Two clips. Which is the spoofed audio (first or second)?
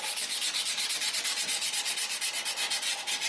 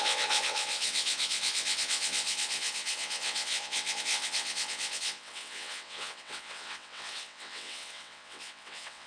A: second